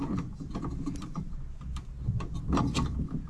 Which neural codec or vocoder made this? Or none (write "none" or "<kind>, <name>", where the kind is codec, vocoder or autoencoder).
none